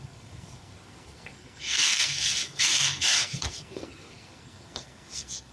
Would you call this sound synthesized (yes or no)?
yes